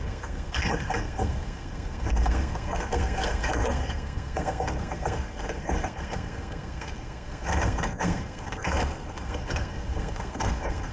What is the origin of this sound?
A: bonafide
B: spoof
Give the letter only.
B